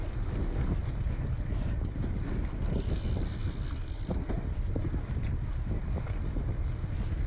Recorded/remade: recorded